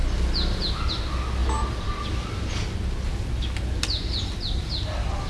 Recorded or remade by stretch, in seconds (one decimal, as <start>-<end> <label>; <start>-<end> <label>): 0.0-5.3 recorded